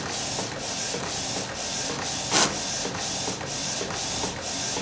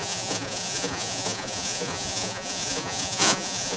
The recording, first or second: first